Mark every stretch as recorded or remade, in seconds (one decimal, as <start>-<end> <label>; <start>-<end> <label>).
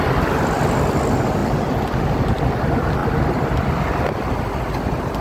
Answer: 0.0-5.2 recorded